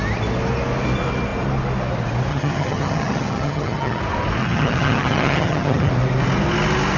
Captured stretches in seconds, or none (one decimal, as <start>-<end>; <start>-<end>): 0.0-2.3; 4.0-4.4; 5.9-7.0